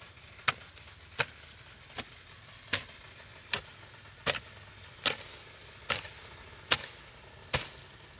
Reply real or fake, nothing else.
real